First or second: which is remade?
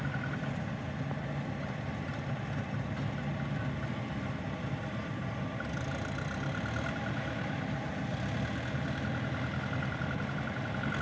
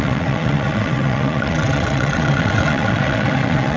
second